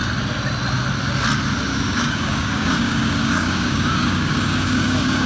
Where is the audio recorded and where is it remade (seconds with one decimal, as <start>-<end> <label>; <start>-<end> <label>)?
0.0-1.7 recorded; 1.7-5.3 remade